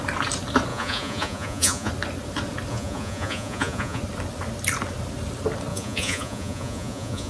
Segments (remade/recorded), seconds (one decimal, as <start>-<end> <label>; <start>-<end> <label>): 0.0-0.7 recorded; 0.7-1.9 remade; 1.9-2.7 recorded; 2.7-4.0 remade; 4.0-5.7 recorded; 5.7-7.3 remade